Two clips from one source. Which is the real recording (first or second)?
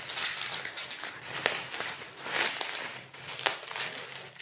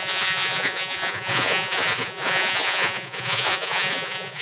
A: first